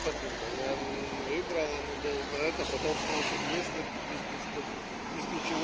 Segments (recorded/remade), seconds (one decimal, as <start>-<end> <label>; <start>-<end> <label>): 0.0-2.5 recorded; 2.5-5.6 remade